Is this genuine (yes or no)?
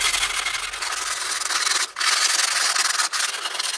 yes